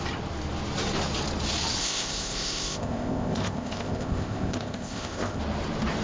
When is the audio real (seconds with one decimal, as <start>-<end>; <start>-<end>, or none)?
0.0-1.8; 5.4-6.0